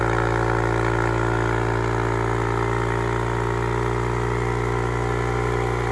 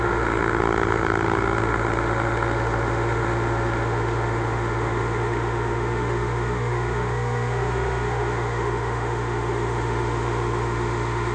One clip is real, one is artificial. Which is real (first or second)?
first